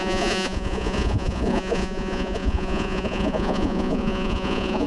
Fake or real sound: fake